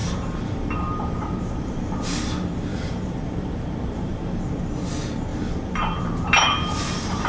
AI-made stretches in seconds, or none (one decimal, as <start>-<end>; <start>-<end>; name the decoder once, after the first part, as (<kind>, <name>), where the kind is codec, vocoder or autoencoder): 0.0-4.4 (vocoder, BigVGAN v2); 5.3-7.3